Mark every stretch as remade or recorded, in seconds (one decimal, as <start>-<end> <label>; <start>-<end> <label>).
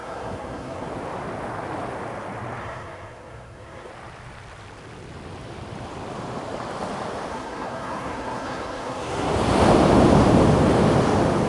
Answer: 0.0-0.9 remade; 0.9-2.6 recorded; 2.6-3.9 remade; 3.9-7.3 recorded; 7.3-9.3 remade; 9.3-11.5 recorded